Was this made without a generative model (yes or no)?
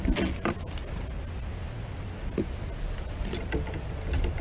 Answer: yes